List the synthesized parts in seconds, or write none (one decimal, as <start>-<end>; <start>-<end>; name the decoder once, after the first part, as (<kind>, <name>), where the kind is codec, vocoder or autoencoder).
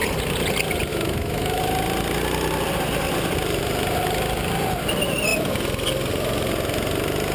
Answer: 0.9-1.6 (autoencoder, DAC-VAE)